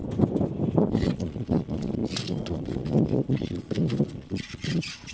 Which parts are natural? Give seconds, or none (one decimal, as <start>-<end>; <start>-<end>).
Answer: 0.0-0.8